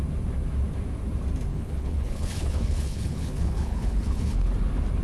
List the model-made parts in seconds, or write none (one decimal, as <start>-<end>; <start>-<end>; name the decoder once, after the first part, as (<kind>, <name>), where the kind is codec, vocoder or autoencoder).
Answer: 1.5-4.5 (codec, HILCodec)